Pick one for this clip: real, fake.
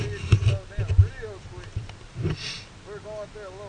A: real